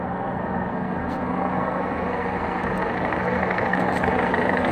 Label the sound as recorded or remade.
remade